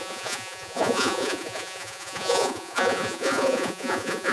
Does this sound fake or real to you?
fake